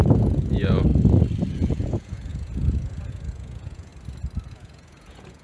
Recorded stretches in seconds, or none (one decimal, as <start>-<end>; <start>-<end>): 0.9-1.5; 3.9-4.5